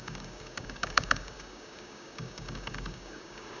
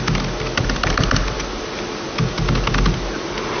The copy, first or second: first